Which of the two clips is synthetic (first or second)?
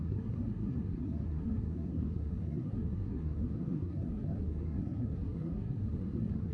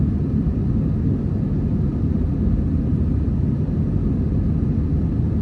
first